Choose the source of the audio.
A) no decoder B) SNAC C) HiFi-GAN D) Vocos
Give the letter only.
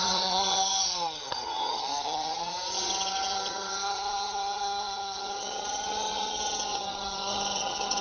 C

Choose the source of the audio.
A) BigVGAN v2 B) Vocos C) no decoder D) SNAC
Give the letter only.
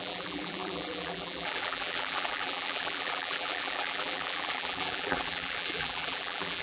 A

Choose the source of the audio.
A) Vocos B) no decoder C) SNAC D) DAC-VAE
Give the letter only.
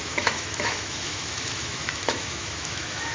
D